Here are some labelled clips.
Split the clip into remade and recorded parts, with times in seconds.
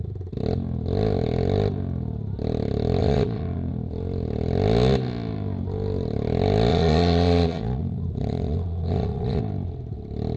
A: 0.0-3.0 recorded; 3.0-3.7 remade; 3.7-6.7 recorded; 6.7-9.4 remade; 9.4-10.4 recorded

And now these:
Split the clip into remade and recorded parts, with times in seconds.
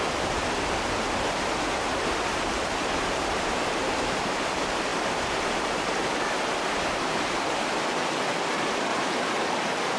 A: 0.0-1.9 recorded; 1.9-4.3 remade; 4.3-8.9 recorded; 8.9-9.4 remade; 9.4-10.0 recorded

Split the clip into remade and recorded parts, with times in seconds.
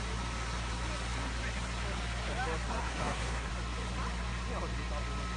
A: 0.0-2.8 recorded; 2.8-3.5 remade; 3.5-5.4 recorded